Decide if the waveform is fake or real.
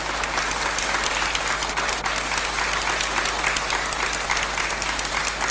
real